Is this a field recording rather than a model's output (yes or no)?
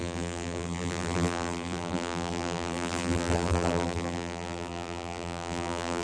no